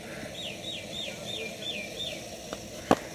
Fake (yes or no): no